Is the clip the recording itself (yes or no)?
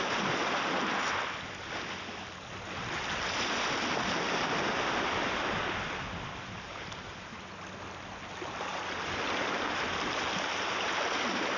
yes